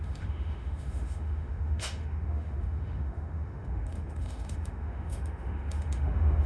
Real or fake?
fake